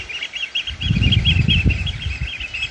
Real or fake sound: real